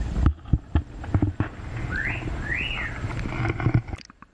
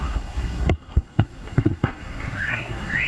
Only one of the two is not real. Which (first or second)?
second